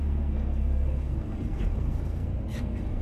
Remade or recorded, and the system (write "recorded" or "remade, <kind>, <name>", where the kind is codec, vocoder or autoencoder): remade, codec, SNAC